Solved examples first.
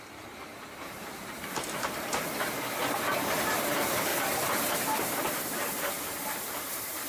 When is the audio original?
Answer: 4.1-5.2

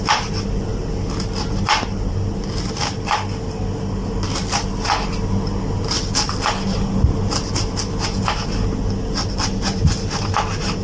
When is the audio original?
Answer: 0.0-10.8